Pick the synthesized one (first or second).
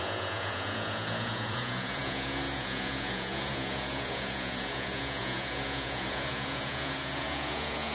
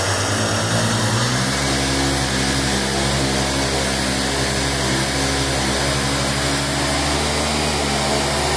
first